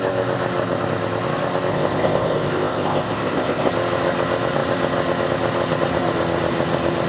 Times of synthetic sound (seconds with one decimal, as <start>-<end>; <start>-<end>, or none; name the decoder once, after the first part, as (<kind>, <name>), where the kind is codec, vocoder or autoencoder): 1.7-3.7 (codec, ZipCodec)